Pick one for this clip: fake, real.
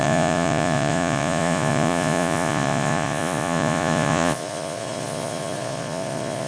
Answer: fake